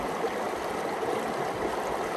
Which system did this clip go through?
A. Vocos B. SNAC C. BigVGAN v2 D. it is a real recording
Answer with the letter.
D